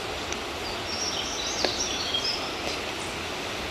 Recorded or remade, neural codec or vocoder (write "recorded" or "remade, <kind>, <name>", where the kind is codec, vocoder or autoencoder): recorded